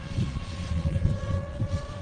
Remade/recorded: remade